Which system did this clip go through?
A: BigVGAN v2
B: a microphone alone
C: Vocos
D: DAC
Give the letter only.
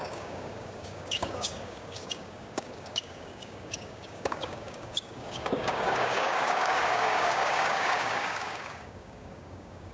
D